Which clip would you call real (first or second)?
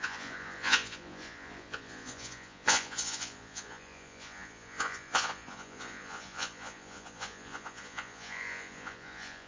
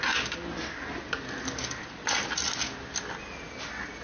second